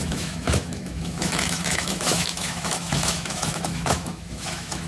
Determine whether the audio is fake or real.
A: fake